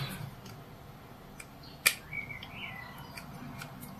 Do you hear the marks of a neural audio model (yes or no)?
no